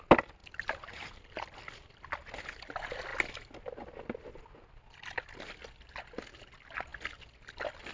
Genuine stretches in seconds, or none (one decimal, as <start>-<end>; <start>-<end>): 0.0-0.4; 1.2-7.9